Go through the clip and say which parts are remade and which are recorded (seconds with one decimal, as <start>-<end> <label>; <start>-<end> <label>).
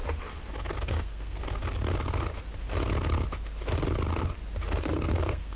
0.0-0.8 recorded; 0.8-1.4 remade; 1.4-4.8 recorded; 4.8-5.6 remade